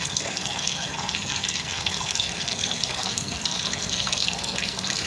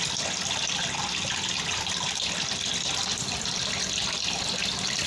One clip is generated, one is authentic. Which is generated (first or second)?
first